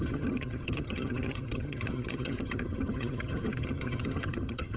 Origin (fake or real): fake